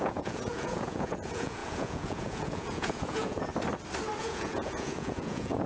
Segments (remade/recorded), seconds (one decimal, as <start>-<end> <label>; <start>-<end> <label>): 0.0-3.5 remade; 3.5-4.2 recorded; 4.2-5.7 remade